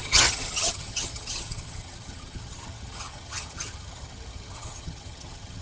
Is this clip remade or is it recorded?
remade